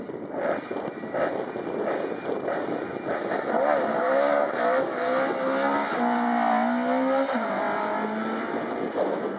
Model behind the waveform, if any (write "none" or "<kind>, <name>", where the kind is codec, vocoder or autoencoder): none